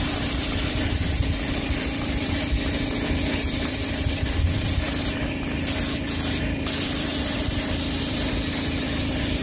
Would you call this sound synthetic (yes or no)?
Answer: yes